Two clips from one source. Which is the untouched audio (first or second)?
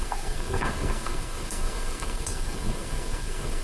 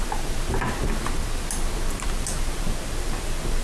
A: second